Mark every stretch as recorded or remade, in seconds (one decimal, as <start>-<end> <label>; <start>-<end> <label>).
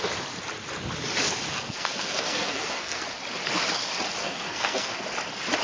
0.0-1.5 recorded; 1.5-3.0 remade; 3.0-4.2 recorded; 4.2-4.9 remade; 4.9-5.6 recorded